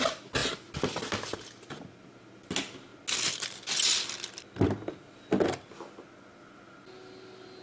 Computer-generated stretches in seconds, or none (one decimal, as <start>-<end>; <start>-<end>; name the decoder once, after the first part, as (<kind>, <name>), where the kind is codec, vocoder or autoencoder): none